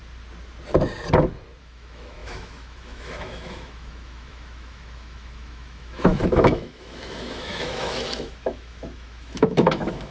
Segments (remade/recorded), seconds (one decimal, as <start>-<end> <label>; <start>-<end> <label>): 0.0-1.6 recorded; 1.6-10.1 remade